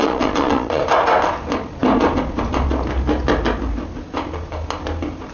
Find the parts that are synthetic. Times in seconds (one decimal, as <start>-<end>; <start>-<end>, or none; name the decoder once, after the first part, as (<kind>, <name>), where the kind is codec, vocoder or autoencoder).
0.0-0.8 (vocoder, Vocos)